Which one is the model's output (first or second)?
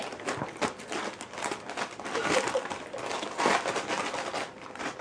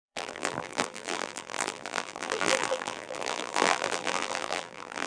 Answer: second